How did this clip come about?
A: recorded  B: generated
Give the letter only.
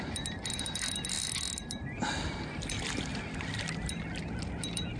A